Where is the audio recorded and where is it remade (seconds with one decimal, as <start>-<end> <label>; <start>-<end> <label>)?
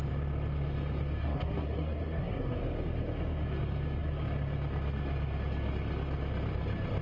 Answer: 0.0-1.2 recorded; 1.2-2.6 remade; 2.6-7.0 recorded